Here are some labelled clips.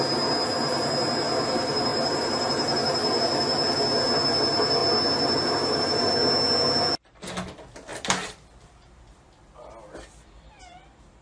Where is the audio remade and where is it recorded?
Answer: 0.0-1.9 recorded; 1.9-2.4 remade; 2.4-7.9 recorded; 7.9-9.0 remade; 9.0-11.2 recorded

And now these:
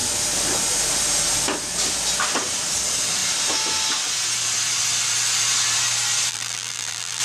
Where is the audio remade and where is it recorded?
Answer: 0.0-6.3 recorded; 6.3-7.2 remade

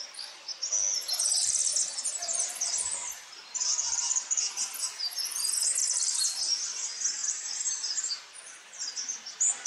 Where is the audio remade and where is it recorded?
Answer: 0.0-5.8 recorded; 5.8-6.4 remade; 6.4-7.2 recorded; 7.2-8.2 remade; 8.2-9.7 recorded

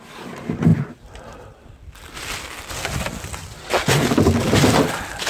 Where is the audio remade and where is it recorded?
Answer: 0.0-5.3 recorded

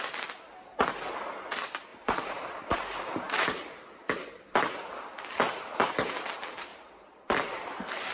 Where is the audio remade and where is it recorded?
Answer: 0.0-1.9 recorded; 1.9-3.8 remade; 3.8-6.7 recorded; 6.7-8.1 remade

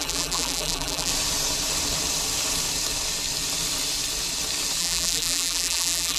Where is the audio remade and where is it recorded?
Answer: 0.0-1.1 remade; 1.1-4.8 recorded; 4.8-6.2 remade

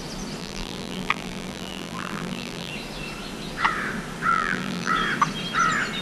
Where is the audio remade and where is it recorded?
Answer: 0.0-0.4 recorded; 0.4-2.7 remade; 2.7-4.3 recorded; 4.3-4.9 remade; 4.9-6.0 recorded